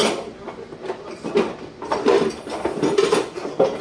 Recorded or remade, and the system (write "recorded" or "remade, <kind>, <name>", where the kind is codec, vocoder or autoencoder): recorded